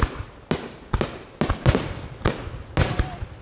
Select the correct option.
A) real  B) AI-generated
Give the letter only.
A